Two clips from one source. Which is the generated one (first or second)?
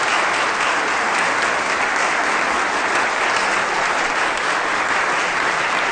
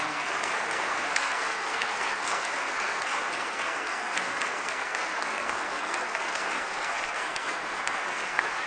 second